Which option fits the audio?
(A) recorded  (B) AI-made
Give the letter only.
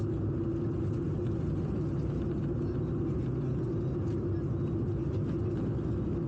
A